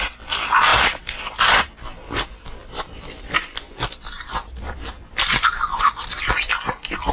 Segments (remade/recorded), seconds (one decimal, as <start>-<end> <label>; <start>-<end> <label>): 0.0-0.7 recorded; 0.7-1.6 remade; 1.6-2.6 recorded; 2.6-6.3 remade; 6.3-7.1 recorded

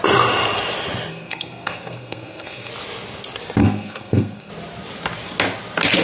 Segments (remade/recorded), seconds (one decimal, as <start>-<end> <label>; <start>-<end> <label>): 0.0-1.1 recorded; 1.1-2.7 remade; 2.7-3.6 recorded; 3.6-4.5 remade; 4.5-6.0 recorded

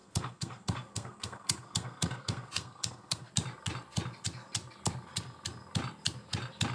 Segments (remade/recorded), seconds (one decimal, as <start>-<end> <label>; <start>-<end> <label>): 0.0-3.3 remade; 3.3-6.7 recorded

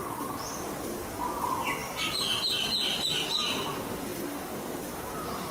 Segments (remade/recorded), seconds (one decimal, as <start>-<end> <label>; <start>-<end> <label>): 0.0-5.5 recorded

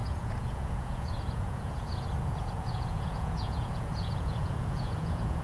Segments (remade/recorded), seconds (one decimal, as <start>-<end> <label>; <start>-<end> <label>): 0.0-5.4 remade